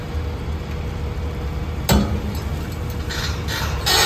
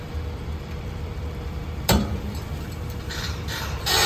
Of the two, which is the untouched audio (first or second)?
first